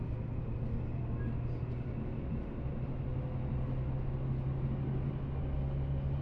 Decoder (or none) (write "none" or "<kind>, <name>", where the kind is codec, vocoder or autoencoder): none